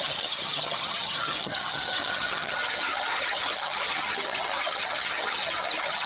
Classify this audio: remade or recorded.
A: remade